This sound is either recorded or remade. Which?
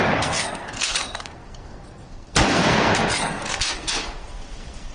remade